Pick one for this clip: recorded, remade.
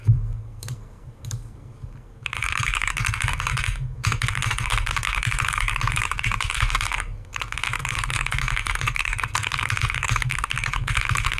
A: remade